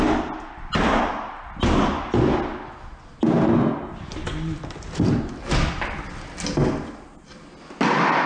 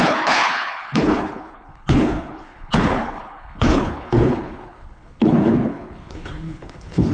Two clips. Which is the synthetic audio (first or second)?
second